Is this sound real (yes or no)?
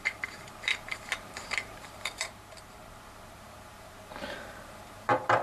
no